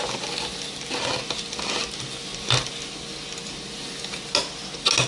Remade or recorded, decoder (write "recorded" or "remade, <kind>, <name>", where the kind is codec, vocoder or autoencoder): recorded